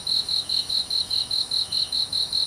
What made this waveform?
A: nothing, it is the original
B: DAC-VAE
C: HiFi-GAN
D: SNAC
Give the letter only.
B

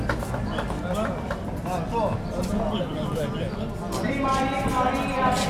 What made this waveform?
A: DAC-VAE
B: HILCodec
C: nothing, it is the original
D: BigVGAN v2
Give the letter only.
C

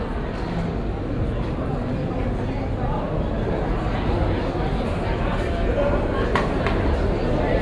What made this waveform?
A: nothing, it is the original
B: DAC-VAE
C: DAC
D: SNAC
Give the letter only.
A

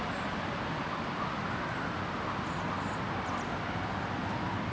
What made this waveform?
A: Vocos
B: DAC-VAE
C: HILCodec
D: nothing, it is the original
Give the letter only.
D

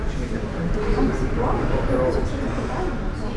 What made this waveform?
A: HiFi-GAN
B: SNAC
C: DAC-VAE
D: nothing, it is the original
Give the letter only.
D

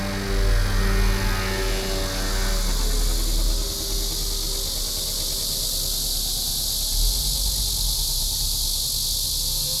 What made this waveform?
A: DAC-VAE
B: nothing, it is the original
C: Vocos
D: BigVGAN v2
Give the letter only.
B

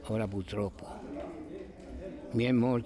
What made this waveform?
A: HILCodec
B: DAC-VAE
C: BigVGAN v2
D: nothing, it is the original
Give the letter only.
D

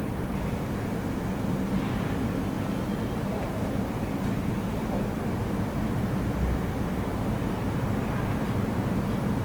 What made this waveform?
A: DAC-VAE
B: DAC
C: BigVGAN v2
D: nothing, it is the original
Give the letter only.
D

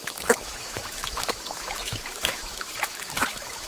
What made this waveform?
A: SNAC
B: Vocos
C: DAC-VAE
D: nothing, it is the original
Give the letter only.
C